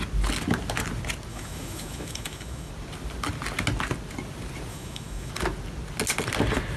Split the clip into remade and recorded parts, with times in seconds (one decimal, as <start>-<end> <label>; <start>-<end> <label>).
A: 0.0-1.3 recorded; 1.3-2.7 remade; 2.7-4.7 recorded; 4.7-5.3 remade; 5.3-6.8 recorded